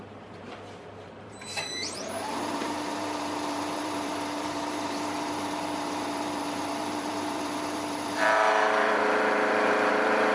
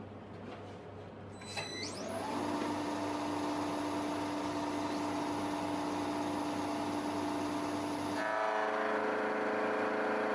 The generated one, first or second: first